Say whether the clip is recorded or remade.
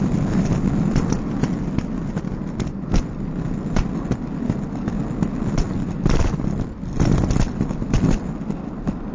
recorded